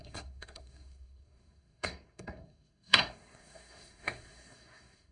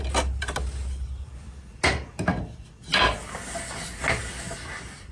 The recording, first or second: second